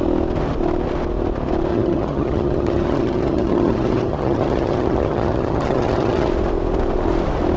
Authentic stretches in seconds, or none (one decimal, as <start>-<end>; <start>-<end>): 0.0-1.7; 6.3-7.6